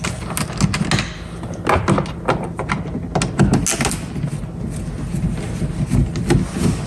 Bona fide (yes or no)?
yes